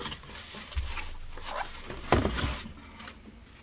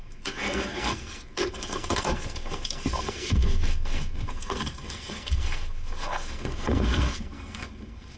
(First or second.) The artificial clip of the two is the second